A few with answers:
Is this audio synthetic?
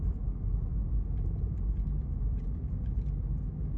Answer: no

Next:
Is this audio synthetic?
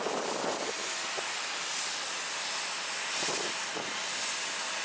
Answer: no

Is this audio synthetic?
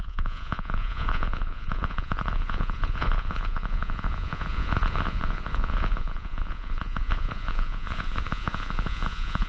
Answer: yes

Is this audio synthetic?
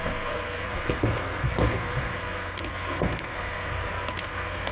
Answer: yes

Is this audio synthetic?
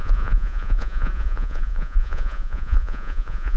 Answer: yes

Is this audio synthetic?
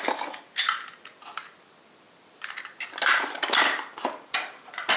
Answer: no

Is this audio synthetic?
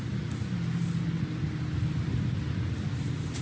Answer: no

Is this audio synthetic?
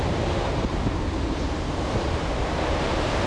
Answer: yes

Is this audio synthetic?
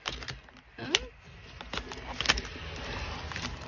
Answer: no